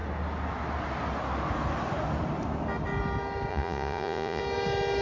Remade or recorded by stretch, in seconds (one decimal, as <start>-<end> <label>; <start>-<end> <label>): 0.0-3.5 recorded; 3.5-4.4 remade; 4.4-5.0 recorded